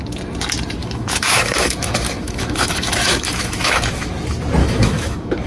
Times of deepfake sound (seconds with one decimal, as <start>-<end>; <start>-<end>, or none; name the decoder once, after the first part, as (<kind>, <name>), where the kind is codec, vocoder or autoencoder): 0.8-4.1 (autoencoder, DAC-VAE); 4.6-5.5